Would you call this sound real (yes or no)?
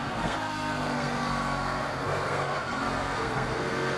no